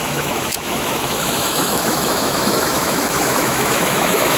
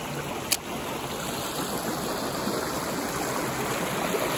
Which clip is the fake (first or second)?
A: first